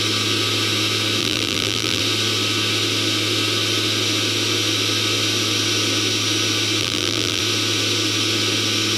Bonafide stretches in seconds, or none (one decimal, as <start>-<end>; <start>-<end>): 0.0-1.2; 2.0-6.8; 7.4-9.0